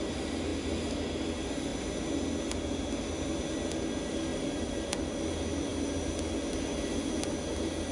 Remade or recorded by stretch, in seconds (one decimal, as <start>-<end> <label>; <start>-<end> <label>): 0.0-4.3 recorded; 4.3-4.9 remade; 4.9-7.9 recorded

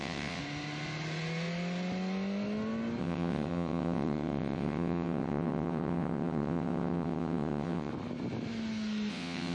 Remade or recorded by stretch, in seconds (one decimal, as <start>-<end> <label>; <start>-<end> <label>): 0.0-0.4 remade; 0.4-3.0 recorded; 3.0-7.9 remade; 7.9-9.1 recorded; 9.1-9.5 remade

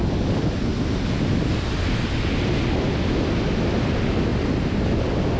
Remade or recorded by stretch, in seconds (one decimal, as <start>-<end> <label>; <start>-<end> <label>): 0.0-0.7 remade; 0.7-3.9 recorded; 3.9-4.3 remade; 4.3-5.4 recorded

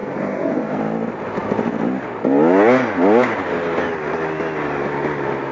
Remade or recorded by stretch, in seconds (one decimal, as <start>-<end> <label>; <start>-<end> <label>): 0.0-0.8 remade; 0.8-5.5 recorded

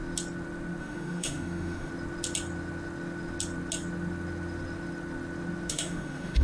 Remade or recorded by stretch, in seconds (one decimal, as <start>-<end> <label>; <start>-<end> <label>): 0.0-0.8 recorded; 0.8-1.9 remade; 1.9-5.7 recorded; 5.7-6.4 remade

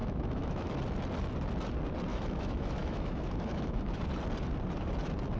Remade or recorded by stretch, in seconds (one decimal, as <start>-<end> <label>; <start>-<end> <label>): 0.0-0.8 remade; 0.8-2.1 recorded; 2.1-4.0 remade; 4.0-5.4 recorded

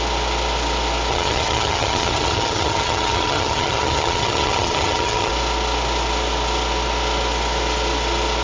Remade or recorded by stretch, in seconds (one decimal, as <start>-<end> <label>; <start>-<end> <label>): 0.0-1.1 recorded; 1.1-5.3 remade; 5.3-8.4 recorded

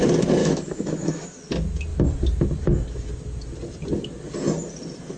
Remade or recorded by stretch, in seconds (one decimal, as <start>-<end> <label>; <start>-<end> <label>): 0.0-0.4 recorded; 0.4-1.4 remade; 1.4-5.2 recorded